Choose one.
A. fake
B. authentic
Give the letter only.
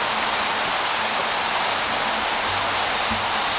B